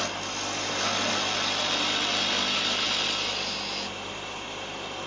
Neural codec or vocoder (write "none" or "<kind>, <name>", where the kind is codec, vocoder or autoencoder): none